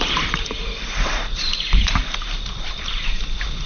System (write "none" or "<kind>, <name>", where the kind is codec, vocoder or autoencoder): vocoder, BigVGAN v2